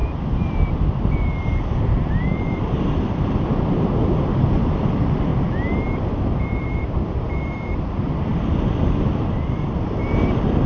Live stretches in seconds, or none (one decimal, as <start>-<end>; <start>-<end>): 5.3-6.4